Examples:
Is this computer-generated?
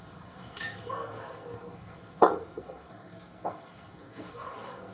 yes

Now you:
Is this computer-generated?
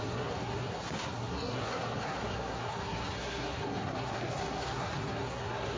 yes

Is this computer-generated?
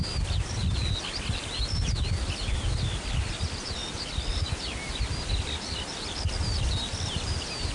no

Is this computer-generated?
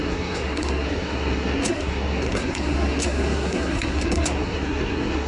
yes